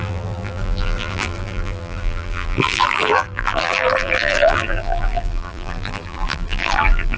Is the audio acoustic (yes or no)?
no